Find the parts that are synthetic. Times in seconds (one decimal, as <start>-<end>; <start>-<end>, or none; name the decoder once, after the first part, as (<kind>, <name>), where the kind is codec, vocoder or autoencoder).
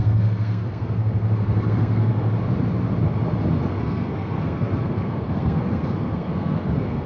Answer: 0.0-2.1 (codec, SNAC); 3.8-7.1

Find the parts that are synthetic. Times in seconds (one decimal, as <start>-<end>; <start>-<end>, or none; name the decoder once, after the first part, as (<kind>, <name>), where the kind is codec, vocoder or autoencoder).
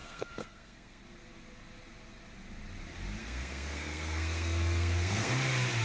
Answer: 0.0-1.0 (codec, SNAC); 3.2-5.3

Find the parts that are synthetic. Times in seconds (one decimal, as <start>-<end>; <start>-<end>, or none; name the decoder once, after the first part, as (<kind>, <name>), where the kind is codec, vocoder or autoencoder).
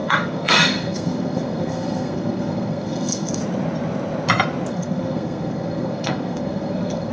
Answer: 0.0-3.4 (codec, SNAC); 4.7-7.1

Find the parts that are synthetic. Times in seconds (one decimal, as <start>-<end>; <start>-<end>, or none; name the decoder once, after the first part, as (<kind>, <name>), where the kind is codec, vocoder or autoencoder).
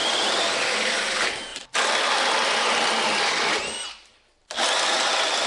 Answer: none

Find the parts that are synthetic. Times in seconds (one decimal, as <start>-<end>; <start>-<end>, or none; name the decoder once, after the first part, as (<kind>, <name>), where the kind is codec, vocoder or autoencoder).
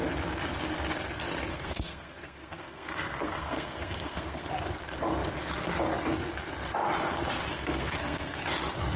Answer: 1.5-4.5 (codec, SNAC); 7.5-8.4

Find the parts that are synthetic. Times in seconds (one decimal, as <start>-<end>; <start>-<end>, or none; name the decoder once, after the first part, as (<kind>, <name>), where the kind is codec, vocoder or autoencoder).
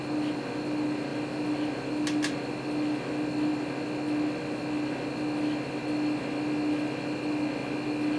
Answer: none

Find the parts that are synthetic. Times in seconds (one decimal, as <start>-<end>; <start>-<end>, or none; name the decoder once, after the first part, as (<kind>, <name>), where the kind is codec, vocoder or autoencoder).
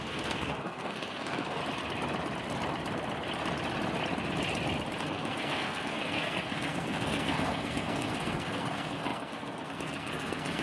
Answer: 0.0-1.6 (codec, SNAC); 5.0-10.6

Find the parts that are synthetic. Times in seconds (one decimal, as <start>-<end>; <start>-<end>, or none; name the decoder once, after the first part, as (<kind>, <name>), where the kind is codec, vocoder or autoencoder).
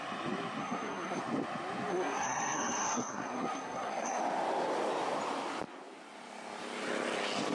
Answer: 0.6-1.2 (codec, SNAC); 1.9-4.2